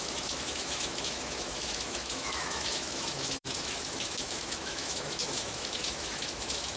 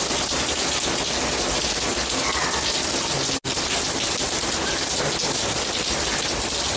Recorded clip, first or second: second